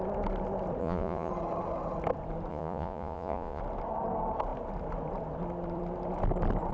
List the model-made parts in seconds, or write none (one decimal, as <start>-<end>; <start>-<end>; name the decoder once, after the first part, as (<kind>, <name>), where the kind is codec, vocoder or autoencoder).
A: 0.8-1.3 (vocoder, Vocos); 2.5-3.6